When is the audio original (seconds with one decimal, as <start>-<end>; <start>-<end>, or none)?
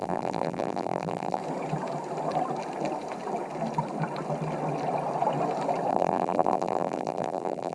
1.4-5.9